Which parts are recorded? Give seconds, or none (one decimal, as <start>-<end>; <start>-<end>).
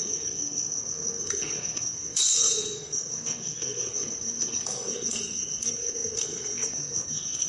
none